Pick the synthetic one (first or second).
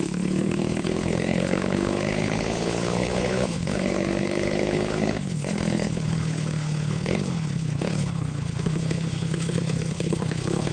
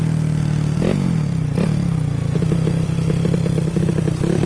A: first